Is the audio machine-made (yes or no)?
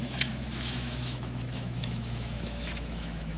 yes